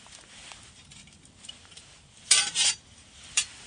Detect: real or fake fake